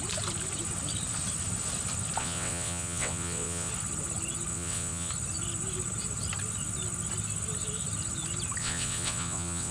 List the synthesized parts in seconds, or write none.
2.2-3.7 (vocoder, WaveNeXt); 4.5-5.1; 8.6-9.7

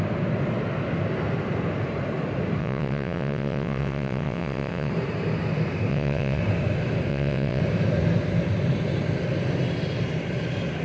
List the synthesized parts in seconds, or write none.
2.6-4.9 (vocoder, WaveNeXt); 5.9-6.4; 7.1-7.6